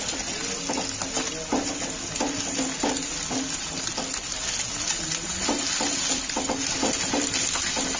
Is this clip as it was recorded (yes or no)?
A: yes